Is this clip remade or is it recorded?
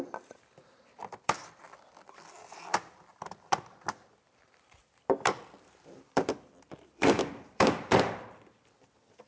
remade